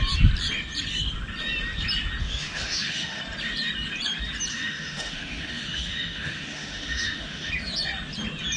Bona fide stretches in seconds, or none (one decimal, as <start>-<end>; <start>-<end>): 0.0-2.2; 3.2-4.5; 7.5-8.6